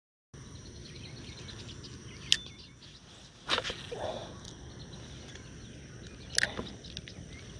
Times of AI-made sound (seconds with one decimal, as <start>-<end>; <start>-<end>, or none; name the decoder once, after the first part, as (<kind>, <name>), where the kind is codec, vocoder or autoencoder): none